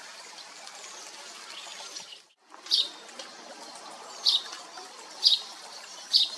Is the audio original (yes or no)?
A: yes